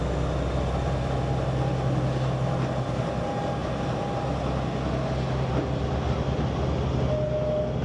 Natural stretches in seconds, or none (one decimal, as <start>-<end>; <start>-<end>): 0.0-7.8